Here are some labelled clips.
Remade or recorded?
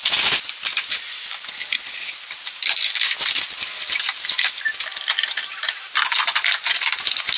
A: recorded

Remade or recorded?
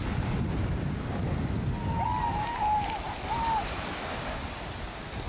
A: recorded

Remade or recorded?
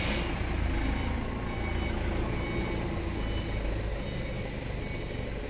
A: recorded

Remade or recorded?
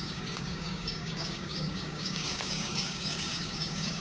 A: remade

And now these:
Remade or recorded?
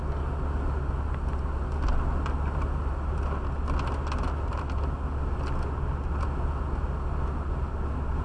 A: recorded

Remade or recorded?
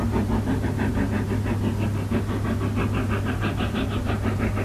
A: recorded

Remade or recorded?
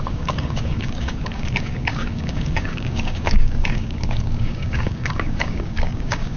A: remade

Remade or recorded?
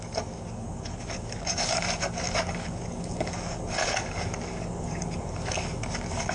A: remade